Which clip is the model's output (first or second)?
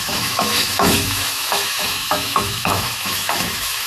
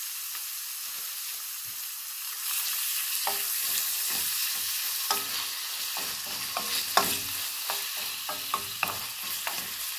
first